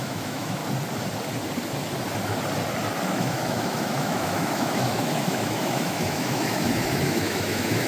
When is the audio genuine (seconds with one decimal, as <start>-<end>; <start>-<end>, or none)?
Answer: 0.6-3.1